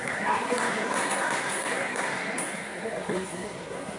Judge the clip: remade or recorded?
remade